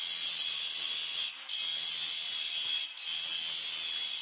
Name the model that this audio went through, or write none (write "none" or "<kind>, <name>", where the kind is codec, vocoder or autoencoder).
none